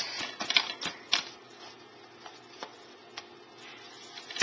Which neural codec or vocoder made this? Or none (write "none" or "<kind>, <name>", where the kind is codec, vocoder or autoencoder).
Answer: none